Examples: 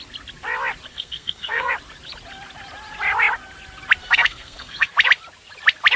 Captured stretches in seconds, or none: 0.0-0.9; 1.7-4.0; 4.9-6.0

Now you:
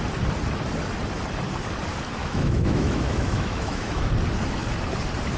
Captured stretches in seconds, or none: 0.0-2.2; 4.1-5.4

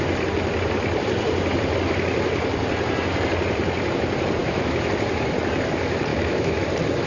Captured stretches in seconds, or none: 0.0-4.4; 4.9-6.1; 6.6-7.1

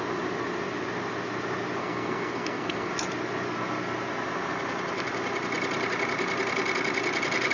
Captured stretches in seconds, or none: 0.0-1.8; 2.9-7.5

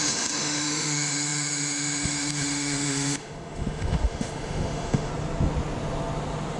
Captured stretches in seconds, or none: 5.1-6.6